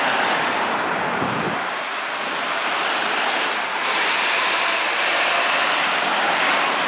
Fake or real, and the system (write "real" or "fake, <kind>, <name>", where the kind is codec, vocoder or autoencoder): fake, vocoder, BigVGAN v2